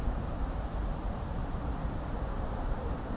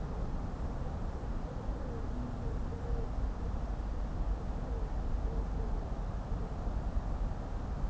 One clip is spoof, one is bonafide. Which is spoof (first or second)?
first